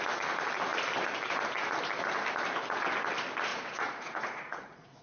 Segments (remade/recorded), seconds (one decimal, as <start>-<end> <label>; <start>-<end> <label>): 0.0-3.5 recorded; 3.5-5.0 remade